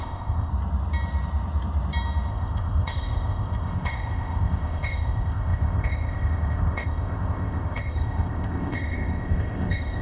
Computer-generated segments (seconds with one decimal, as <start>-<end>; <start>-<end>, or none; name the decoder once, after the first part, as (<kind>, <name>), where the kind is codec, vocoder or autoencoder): 0.0-0.5 (codec, ZipCodec); 2.3-10.0